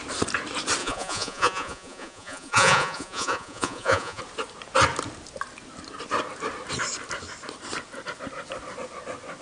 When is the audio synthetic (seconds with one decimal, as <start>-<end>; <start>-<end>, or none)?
0.8-4.2